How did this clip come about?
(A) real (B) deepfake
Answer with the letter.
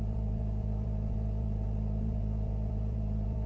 B